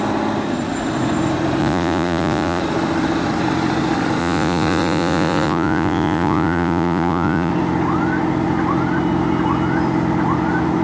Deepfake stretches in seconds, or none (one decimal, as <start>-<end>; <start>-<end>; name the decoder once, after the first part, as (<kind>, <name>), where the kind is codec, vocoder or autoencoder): 1.6-2.6 (vocoder, Vocos); 4.2-7.5